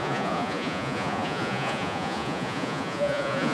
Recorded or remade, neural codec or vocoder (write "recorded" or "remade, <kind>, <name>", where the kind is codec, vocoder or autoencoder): remade, vocoder, Vocos